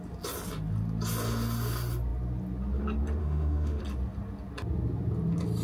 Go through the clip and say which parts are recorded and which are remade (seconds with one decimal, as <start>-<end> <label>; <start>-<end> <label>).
0.0-3.2 recorded; 3.2-3.8 remade; 3.8-5.6 recorded